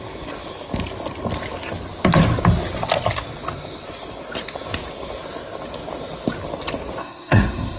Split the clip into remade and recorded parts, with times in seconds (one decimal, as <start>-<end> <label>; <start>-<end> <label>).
0.0-7.0 recorded; 7.0-7.8 remade